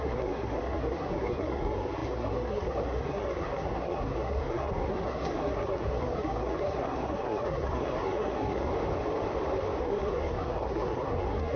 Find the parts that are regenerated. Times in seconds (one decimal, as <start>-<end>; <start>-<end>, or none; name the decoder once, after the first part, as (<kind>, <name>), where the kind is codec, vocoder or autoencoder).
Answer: 0.0-8.7 (codec, SNAC); 9.8-11.6